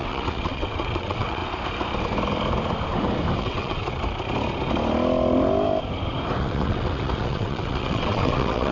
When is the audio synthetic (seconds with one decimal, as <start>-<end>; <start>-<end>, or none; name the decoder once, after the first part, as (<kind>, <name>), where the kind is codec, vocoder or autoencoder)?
0.0-1.4 (vocoder, WaveNeXt); 3.4-3.8; 6.4-8.7